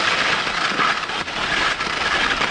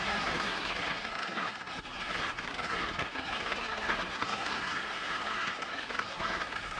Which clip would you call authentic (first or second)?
first